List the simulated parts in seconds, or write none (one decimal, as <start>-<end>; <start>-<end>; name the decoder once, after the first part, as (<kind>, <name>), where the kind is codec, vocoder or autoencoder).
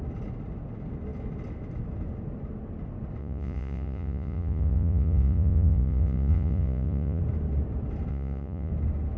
3.2-7.2 (vocoder, Vocos); 8.1-8.7